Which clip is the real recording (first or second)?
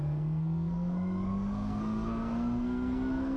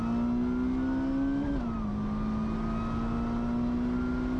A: second